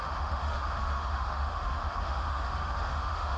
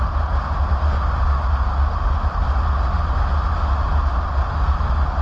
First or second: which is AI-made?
first